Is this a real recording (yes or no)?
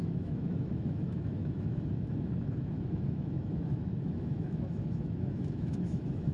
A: no